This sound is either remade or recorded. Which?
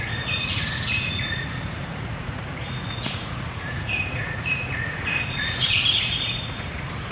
remade